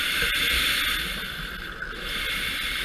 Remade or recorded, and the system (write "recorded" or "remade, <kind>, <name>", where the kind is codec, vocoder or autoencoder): recorded